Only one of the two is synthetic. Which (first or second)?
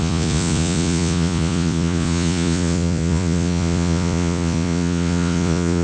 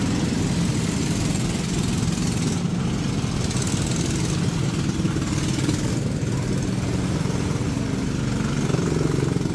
first